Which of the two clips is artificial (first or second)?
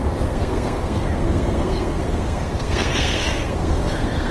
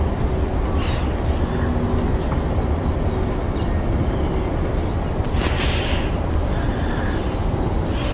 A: first